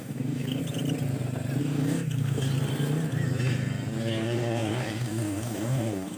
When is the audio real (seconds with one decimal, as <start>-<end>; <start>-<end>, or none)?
0.6-1.6; 2.5-4.0

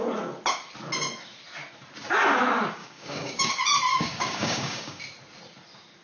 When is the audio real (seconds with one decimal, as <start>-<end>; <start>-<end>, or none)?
0.0-2.8; 3.5-3.9; 5.0-6.0